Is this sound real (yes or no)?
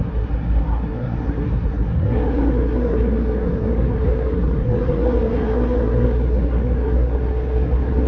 no